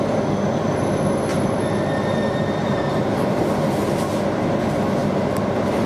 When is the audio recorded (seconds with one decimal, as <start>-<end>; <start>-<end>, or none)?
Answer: 0.0-1.3; 1.9-2.6; 3.4-5.0